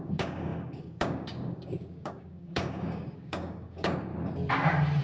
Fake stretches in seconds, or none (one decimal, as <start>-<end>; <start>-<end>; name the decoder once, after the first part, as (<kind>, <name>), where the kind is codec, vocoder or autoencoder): 0.0-4.1 (codec, DAC)